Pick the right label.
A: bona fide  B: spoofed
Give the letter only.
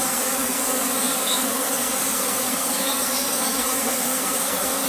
B